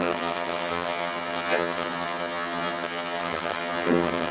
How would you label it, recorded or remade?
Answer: remade